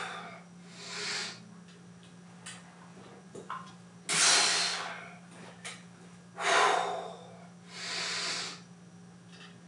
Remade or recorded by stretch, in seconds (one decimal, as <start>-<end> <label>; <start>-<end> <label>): 0.0-2.9 recorded; 2.9-3.7 remade; 3.7-9.7 recorded